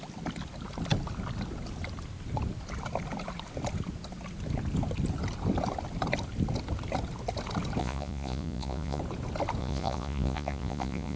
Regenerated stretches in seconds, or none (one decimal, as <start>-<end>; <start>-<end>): 7.8-9.0; 9.6-11.2